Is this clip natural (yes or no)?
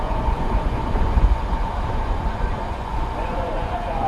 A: no